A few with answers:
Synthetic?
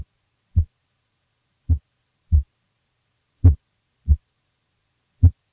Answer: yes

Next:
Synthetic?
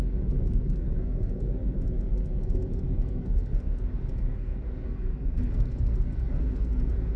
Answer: yes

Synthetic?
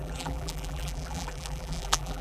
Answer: yes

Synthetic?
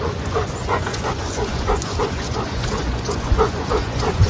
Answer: yes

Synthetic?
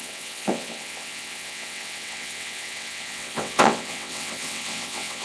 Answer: yes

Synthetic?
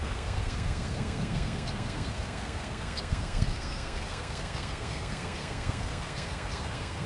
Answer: yes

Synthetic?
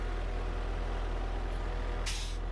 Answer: no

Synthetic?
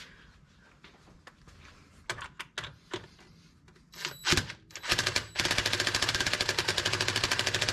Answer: no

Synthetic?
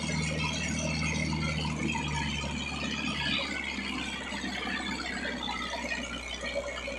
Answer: no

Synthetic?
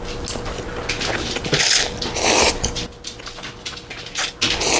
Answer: no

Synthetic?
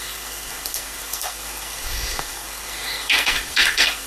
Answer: yes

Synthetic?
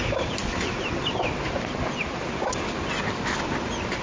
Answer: no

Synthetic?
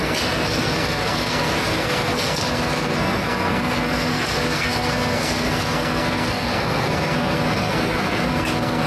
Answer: yes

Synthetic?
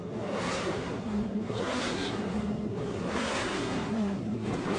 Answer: yes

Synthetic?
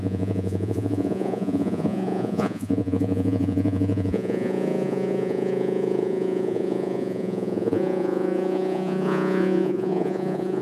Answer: yes